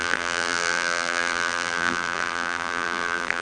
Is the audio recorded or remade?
remade